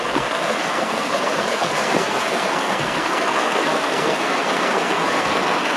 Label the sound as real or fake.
fake